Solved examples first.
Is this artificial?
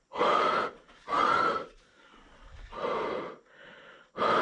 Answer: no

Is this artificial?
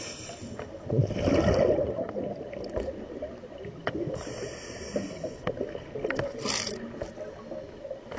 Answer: no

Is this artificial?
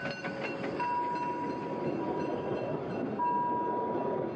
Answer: no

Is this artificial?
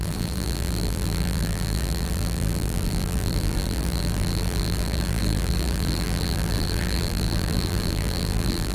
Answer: yes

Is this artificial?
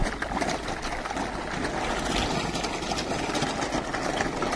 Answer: no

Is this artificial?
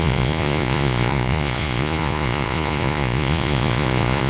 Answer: yes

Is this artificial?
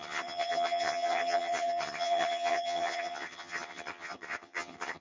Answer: yes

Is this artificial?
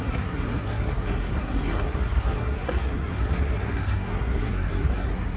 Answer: yes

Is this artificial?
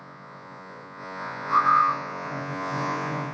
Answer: yes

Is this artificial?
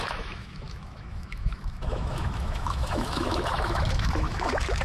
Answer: yes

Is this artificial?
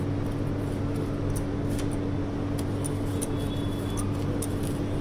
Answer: no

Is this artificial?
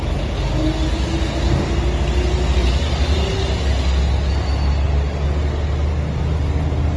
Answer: no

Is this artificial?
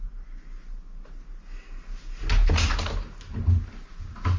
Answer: no